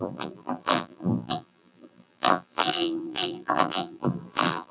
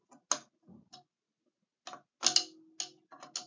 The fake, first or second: first